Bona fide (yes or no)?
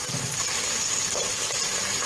yes